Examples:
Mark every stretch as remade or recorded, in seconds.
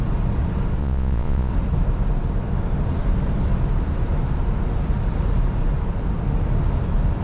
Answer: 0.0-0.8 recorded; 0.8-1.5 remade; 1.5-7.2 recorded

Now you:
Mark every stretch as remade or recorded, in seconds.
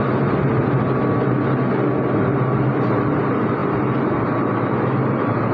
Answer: 0.0-5.5 recorded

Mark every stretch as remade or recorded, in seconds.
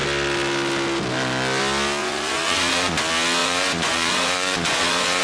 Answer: 0.0-2.0 recorded; 2.0-3.0 remade; 3.0-3.4 recorded; 3.4-5.2 remade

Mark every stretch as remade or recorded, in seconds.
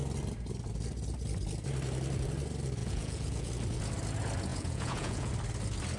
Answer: 0.0-2.8 recorded; 2.8-3.5 remade; 3.5-4.5 recorded; 4.5-5.3 remade; 5.3-6.0 recorded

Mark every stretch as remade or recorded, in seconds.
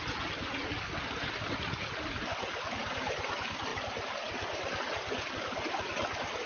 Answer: 0.0-6.5 recorded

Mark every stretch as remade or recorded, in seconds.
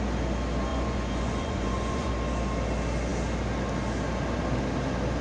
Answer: 0.0-0.7 recorded; 0.7-2.1 remade; 2.1-5.2 recorded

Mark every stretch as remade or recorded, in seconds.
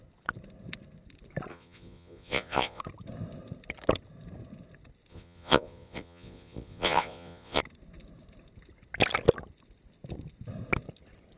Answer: 0.0-1.5 recorded; 1.5-2.8 remade; 2.8-5.1 recorded; 5.1-7.6 remade; 7.6-11.4 recorded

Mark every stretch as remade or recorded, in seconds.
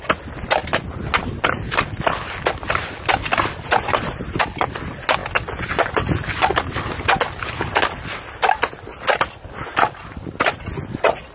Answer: 0.0-11.3 recorded